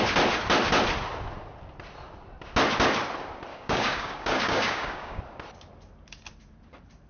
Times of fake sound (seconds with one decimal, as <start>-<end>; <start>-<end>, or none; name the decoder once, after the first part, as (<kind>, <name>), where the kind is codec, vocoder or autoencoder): 3.5-5.2 (codec, DAC)